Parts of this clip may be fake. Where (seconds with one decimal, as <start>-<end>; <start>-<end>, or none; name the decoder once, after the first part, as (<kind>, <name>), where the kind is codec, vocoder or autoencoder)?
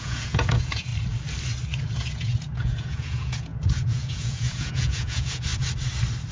0.0-0.9 (vocoder, Vocos); 1.9-5.5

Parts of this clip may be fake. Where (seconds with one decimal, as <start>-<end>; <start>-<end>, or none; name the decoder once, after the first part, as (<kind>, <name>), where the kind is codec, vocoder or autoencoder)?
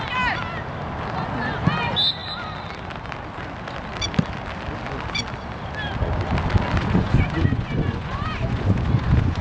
6.8-9.4 (vocoder, Vocos)